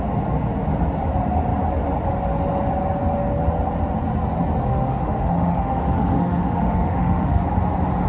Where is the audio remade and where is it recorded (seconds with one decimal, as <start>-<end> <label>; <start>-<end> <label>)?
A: 0.0-4.7 recorded; 4.7-7.4 remade; 7.4-8.1 recorded